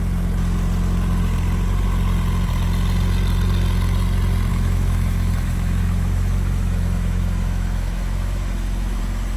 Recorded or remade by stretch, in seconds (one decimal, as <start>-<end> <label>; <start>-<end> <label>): 0.0-4.5 recorded; 4.5-9.0 remade; 9.0-9.4 recorded